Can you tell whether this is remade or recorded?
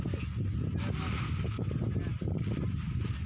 recorded